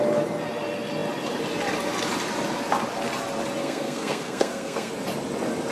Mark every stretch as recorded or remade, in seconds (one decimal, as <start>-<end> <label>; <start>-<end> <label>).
0.0-3.6 recorded; 3.6-4.9 remade; 4.9-5.7 recorded